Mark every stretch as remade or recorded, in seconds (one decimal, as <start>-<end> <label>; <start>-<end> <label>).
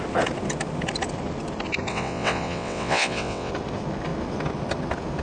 0.0-1.9 recorded; 1.9-3.5 remade; 3.5-5.2 recorded